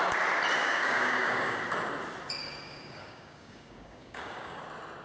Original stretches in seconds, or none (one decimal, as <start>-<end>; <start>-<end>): 0.0-0.6; 1.6-2.4; 4.6-5.0